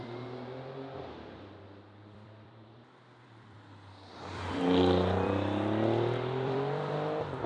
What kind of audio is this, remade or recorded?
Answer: remade